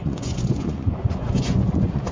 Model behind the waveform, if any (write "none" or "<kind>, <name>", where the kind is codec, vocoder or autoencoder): vocoder, Vocos